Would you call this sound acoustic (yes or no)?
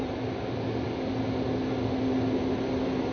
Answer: yes